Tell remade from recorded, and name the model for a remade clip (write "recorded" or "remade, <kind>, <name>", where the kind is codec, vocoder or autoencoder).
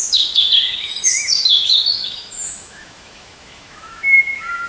remade, autoencoder, DAC-VAE